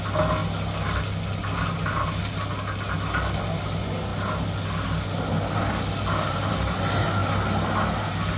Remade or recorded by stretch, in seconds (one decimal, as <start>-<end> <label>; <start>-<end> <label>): 0.0-8.4 recorded